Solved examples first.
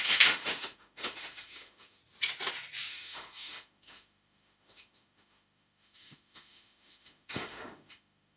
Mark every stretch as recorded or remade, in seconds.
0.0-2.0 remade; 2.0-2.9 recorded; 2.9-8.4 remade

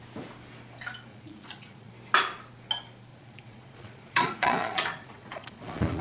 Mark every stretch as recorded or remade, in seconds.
0.0-1.1 recorded; 1.1-1.9 remade; 1.9-3.1 recorded; 3.1-6.0 remade